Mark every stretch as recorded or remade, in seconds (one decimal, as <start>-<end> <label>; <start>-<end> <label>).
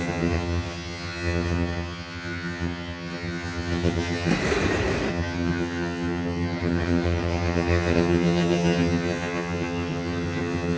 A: 0.0-4.3 remade; 4.3-5.1 recorded; 5.1-10.8 remade